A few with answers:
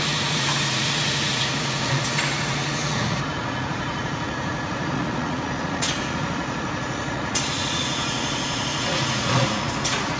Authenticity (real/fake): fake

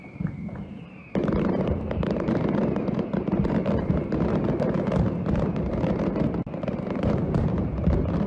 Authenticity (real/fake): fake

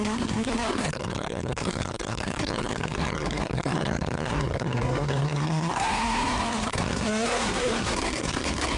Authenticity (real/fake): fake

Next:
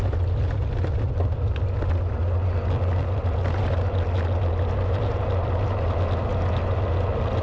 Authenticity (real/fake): real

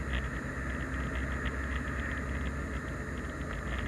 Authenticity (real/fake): real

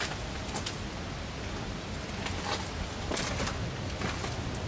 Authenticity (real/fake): real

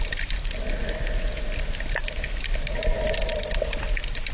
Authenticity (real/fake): real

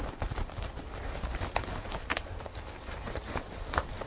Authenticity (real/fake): fake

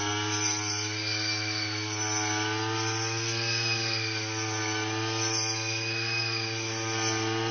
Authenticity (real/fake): real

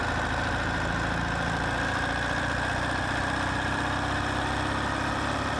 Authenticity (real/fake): real